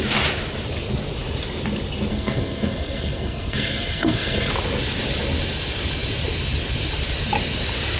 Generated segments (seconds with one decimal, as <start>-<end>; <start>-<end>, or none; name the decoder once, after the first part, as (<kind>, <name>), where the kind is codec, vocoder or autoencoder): 2.1-4.5 (codec, SNAC)